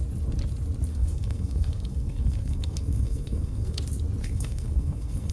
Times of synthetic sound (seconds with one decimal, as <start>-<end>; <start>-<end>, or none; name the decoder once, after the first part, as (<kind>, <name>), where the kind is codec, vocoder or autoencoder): 0.9-3.8 (codec, SNAC); 4.2-5.3